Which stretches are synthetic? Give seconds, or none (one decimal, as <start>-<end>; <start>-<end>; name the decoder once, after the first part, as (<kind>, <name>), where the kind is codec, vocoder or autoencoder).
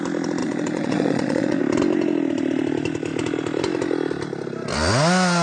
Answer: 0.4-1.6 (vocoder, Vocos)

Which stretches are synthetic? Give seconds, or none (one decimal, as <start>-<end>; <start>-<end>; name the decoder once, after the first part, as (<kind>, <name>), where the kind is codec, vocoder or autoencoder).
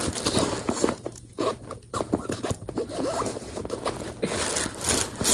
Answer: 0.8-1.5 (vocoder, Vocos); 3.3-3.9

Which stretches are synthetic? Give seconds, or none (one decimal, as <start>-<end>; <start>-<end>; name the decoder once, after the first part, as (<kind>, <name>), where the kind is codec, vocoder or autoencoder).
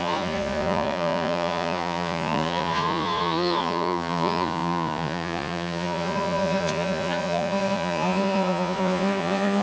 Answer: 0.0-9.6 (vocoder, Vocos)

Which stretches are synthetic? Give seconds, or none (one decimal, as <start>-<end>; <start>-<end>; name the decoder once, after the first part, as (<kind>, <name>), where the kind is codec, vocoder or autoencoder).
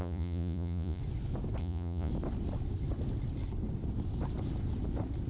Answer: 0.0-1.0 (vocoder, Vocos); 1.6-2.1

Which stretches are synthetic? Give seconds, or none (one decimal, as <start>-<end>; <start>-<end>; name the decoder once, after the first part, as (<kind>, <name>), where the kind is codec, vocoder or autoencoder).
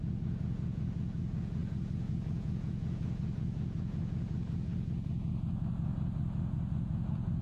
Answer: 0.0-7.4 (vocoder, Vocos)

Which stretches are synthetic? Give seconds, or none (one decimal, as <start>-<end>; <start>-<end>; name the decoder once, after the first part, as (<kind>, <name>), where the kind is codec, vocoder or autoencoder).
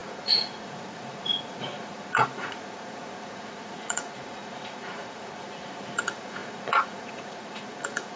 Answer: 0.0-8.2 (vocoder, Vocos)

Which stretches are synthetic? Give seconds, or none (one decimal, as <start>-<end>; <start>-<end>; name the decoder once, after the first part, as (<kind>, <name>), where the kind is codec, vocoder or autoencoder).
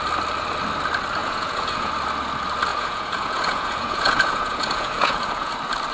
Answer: 1.2-1.9 (vocoder, Vocos); 2.7-5.5